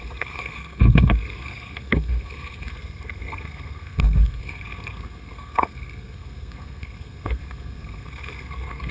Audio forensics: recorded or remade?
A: remade